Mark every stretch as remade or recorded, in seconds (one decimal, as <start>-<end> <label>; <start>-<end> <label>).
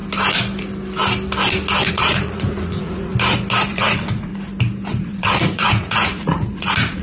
0.0-1.9 recorded; 1.9-3.1 remade; 3.1-3.7 recorded; 3.7-4.3 remade; 4.3-4.9 recorded; 4.9-7.0 remade